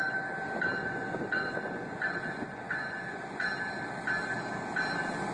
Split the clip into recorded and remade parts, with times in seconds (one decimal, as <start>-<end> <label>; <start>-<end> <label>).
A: 0.0-0.8 recorded; 0.8-3.5 remade; 3.5-5.3 recorded